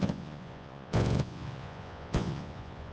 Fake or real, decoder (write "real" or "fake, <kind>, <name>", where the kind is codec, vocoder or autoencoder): fake, vocoder, Vocos